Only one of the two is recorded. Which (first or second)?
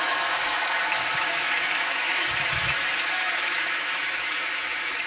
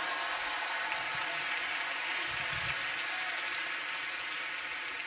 second